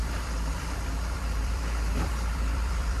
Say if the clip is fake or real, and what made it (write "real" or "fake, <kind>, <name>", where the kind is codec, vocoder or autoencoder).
fake, vocoder, BigVGAN v2